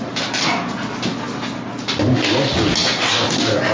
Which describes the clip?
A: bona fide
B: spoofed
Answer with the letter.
A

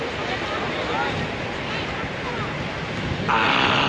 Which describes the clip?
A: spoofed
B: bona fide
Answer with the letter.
B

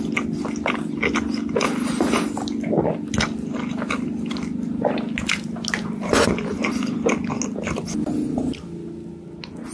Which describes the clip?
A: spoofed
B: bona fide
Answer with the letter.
B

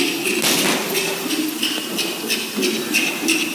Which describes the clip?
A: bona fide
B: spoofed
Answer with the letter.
A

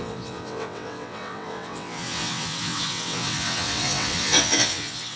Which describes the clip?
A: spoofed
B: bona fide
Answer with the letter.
A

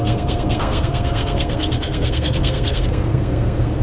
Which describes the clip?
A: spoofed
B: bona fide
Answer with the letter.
A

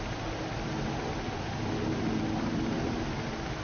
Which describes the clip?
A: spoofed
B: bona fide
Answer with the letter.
B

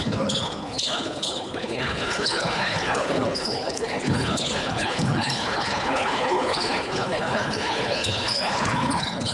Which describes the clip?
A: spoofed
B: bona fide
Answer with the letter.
A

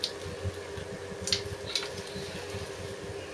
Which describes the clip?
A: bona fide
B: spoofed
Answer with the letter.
A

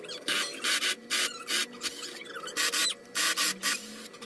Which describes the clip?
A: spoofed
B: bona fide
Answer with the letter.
B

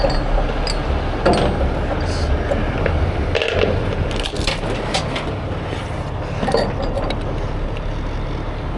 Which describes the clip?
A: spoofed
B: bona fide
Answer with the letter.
B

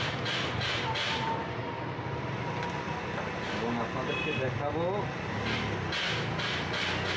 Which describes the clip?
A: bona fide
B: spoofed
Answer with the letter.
A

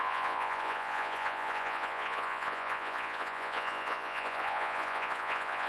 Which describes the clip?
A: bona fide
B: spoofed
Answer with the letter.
B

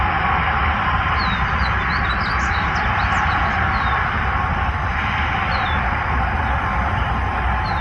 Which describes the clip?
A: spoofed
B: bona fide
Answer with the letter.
B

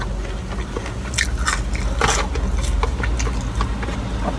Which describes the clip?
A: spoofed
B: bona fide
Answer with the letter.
B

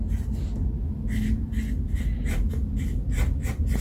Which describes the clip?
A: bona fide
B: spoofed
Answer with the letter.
A